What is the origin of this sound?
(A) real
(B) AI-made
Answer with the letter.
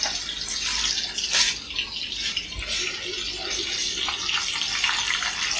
A